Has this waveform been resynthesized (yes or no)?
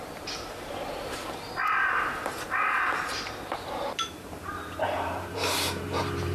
yes